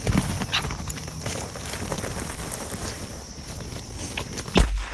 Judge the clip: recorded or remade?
recorded